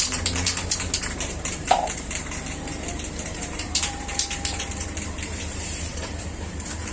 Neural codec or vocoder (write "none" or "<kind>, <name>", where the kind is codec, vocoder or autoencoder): vocoder, BigVGAN v2